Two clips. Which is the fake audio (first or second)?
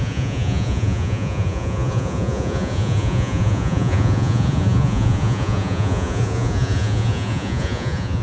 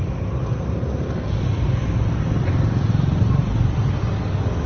first